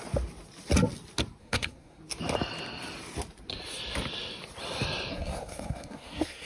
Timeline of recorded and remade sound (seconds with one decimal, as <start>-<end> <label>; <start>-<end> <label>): 0.0-1.4 recorded; 1.4-2.0 remade; 2.0-5.1 recorded; 5.1-6.5 remade